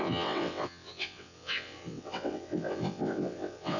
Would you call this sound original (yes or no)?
no